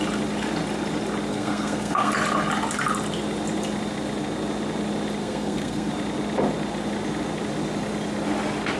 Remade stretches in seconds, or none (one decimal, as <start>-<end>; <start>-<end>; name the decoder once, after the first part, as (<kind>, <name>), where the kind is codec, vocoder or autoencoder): 1.3-2.1 (codec, SNAC); 5.2-5.9